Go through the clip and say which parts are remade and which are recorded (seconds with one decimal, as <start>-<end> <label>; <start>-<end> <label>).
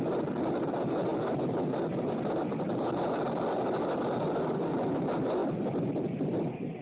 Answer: 0.0-6.8 recorded